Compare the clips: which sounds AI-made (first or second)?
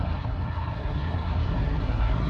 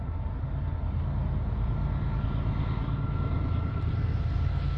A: first